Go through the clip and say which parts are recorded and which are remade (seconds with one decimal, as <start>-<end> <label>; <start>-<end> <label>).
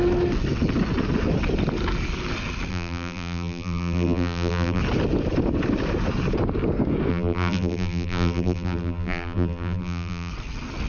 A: 0.0-2.7 recorded; 2.7-4.8 remade; 4.8-7.1 recorded; 7.1-10.3 remade; 10.3-10.9 recorded